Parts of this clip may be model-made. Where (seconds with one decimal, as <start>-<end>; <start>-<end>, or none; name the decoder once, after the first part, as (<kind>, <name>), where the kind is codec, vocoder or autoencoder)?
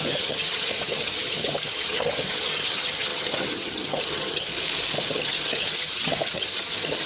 0.0-4.5 (vocoder, HiFi-GAN); 5.1-7.1